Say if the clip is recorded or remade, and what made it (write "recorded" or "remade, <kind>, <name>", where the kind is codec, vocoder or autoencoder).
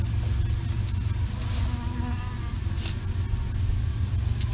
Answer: recorded